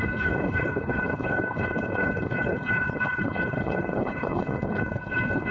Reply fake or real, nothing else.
fake